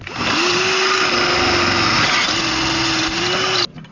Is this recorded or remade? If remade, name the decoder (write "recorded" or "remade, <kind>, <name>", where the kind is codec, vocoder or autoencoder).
recorded